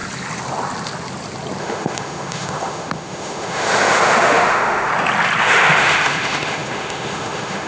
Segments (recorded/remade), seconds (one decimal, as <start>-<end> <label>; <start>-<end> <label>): 0.0-1.6 recorded; 1.6-4.9 remade; 4.9-5.4 recorded; 5.4-7.7 remade

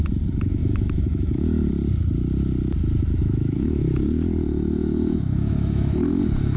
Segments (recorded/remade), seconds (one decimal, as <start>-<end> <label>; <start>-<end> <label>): 0.0-0.6 recorded; 0.6-1.7 remade; 1.7-3.1 recorded; 3.1-3.8 remade; 3.8-4.8 recorded; 4.8-6.0 remade; 6.0-6.6 recorded

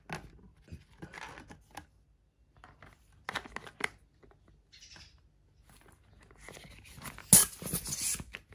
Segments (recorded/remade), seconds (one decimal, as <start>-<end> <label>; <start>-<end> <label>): 0.0-8.5 recorded